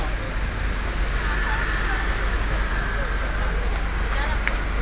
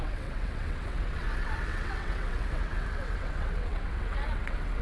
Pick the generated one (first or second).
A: second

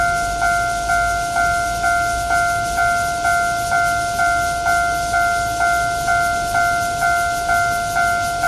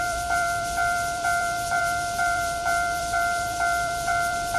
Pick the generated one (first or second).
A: second